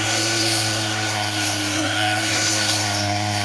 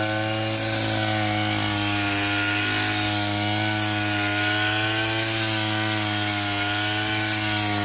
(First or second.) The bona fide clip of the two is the second